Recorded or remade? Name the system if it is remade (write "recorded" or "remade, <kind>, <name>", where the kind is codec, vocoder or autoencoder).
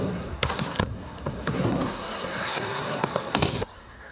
remade, codec, SNAC